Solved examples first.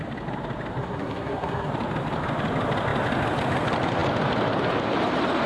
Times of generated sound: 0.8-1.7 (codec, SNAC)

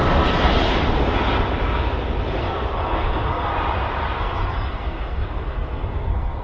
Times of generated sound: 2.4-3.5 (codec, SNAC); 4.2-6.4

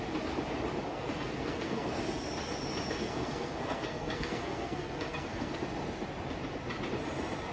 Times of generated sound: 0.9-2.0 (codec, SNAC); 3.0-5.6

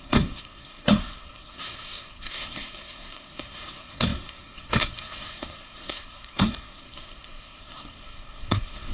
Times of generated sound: 0.0-8.9 (codec, SNAC)

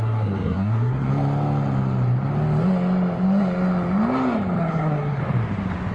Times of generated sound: 0.0-1.1 (codec, SNAC); 4.6-5.2